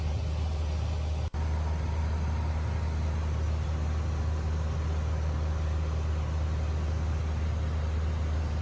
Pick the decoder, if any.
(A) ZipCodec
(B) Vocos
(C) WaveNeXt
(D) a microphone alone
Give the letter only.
D